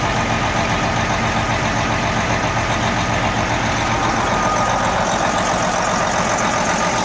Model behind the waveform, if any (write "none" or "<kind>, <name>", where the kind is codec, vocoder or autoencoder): none